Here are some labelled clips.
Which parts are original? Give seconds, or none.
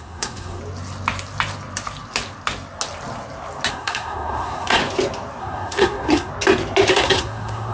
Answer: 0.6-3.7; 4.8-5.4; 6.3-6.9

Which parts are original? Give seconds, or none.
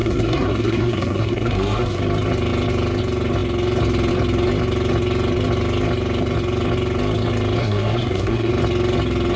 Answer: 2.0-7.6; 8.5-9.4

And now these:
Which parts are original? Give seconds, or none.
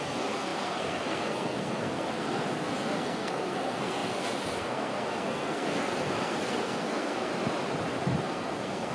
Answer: 7.3-8.2